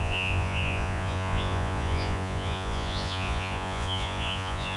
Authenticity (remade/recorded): remade